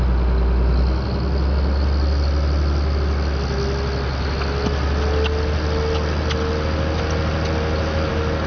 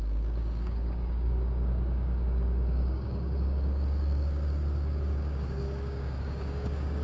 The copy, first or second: second